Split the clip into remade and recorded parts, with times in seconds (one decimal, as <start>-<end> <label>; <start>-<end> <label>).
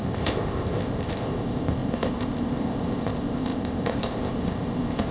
0.0-5.1 remade